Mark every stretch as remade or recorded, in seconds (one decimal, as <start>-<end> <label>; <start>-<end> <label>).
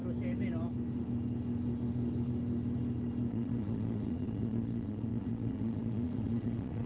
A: 0.0-3.3 recorded; 3.3-6.9 remade